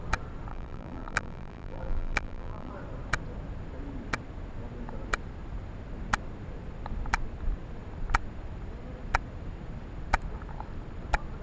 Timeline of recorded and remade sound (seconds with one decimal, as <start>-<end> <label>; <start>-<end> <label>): 0.0-0.5 recorded; 0.5-2.7 remade; 2.7-11.4 recorded